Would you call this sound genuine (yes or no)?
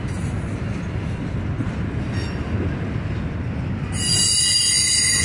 yes